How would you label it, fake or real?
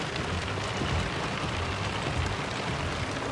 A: real